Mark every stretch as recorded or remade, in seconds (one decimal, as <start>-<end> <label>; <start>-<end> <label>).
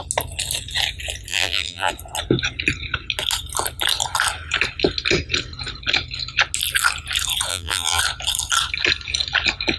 0.0-1.3 recorded; 1.3-1.9 remade; 1.9-7.5 recorded; 7.5-8.0 remade; 8.0-9.8 recorded